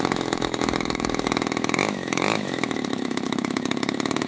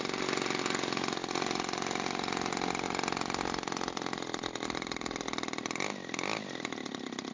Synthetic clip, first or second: first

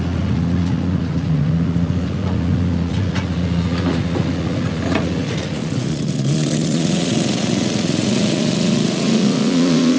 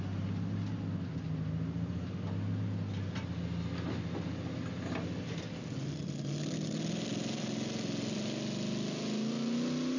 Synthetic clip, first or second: first